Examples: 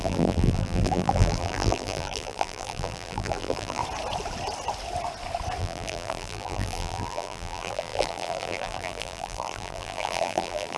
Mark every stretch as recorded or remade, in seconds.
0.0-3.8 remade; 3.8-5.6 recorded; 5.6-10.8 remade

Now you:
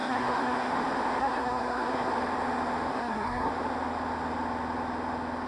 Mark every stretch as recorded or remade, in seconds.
0.0-0.7 remade; 0.7-1.2 recorded; 1.2-2.1 remade; 2.1-2.9 recorded; 2.9-3.5 remade; 3.5-5.5 recorded

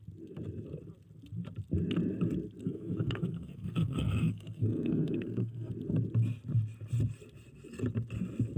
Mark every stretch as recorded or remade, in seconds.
0.0-2.6 recorded; 2.6-5.7 remade; 5.7-8.6 recorded